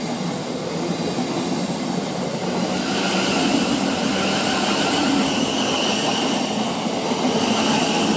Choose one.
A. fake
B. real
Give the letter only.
B